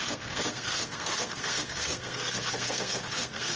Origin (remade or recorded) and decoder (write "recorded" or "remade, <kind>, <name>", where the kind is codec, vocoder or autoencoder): remade, codec, SNAC